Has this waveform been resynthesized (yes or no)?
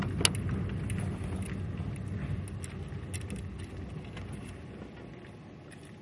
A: no